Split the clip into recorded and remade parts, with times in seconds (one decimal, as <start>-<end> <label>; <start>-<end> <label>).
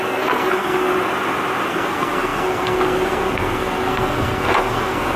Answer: 0.0-0.9 remade; 0.9-1.7 recorded; 1.7-5.2 remade